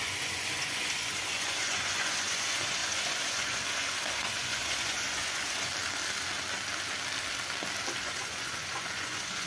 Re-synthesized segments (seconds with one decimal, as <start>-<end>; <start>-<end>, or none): 0.0-5.7; 8.0-9.5